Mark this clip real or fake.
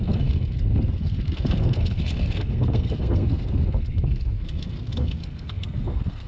fake